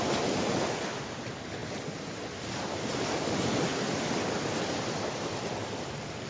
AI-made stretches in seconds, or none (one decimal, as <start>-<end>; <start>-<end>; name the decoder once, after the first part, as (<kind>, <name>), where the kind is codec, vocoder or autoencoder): none